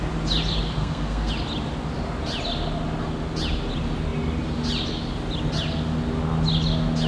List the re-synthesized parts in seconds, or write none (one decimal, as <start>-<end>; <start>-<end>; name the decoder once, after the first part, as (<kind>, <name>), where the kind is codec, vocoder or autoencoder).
0.8-1.3 (codec, SNAC)